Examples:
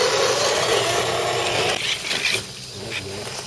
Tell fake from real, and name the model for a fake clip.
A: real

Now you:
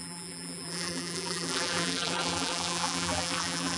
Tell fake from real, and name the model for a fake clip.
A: fake, vocoder, BigVGAN v2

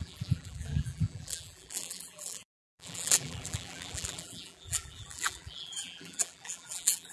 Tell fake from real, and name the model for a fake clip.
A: fake, vocoder, BigVGAN v2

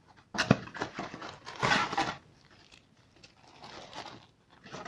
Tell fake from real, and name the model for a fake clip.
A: real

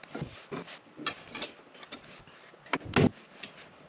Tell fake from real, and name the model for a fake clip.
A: real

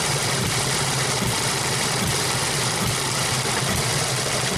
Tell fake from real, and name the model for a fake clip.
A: fake, vocoder, BigVGAN v2